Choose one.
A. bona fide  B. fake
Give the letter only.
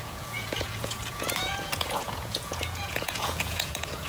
B